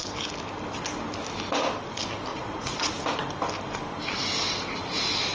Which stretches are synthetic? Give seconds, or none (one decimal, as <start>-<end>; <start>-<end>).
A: 2.3-2.9

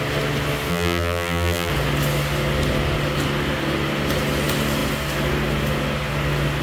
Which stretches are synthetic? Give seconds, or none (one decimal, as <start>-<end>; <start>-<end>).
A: 0.7-1.7

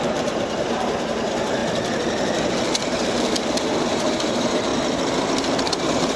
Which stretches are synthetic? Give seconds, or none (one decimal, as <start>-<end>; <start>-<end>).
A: 0.0-1.6; 3.9-4.7; 5.8-6.2